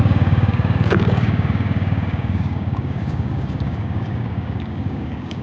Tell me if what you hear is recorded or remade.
remade